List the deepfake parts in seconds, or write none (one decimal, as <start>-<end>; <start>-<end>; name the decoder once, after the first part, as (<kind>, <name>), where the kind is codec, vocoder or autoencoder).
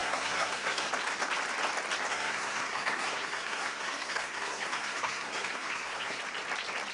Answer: 0.0-0.9 (codec, SNAC); 2.1-6.2